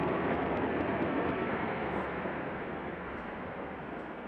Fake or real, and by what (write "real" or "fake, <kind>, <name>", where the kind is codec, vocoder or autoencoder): fake, codec, SNAC